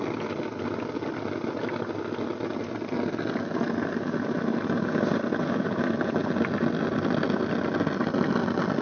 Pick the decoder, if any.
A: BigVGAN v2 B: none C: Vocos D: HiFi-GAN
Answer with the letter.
B